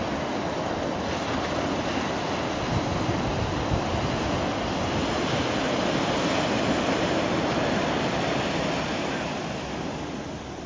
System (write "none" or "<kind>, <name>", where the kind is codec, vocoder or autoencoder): none